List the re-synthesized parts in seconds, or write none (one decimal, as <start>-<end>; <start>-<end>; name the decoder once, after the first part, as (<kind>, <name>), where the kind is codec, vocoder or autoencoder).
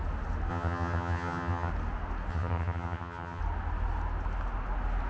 0.5-1.7 (vocoder, HiFi-GAN); 2.3-3.4